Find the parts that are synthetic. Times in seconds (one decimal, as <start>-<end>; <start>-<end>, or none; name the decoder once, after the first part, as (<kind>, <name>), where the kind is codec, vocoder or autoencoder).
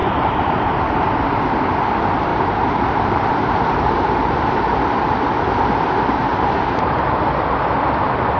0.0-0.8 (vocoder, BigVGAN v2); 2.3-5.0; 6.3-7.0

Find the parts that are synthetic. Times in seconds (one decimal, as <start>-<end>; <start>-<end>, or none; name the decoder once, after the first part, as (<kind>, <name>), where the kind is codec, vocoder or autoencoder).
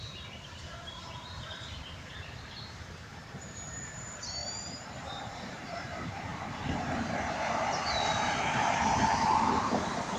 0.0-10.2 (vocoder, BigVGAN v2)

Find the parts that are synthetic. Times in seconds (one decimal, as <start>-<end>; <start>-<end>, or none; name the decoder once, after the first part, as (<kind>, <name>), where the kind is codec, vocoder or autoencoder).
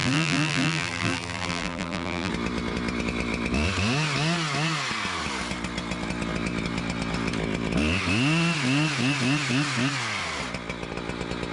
0.0-2.3 (vocoder, BigVGAN v2)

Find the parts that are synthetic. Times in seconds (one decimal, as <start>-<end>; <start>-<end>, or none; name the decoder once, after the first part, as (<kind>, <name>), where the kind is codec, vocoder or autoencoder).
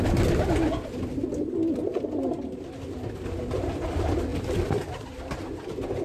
4.3-5.2 (vocoder, BigVGAN v2)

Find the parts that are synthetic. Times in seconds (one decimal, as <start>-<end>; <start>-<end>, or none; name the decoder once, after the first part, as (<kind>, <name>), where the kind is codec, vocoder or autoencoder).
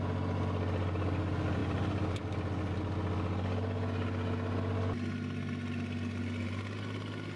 1.6-2.2 (vocoder, BigVGAN v2)